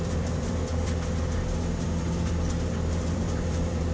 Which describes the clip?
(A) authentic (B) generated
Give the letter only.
B